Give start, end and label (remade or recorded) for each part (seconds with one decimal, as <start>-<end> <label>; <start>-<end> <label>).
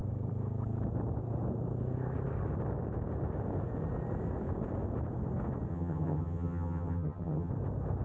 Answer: 0.0-5.7 recorded; 5.7-7.5 remade; 7.5-8.0 recorded